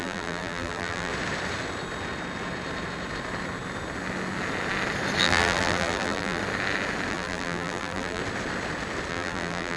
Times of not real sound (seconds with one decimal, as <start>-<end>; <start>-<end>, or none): 0.0-1.1; 5.2-6.4; 7.1-8.2; 9.1-9.8